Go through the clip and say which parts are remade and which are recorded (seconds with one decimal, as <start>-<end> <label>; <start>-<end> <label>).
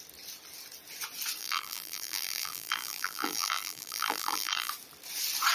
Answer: 0.0-1.4 recorded; 1.4-4.7 remade; 4.7-5.5 recorded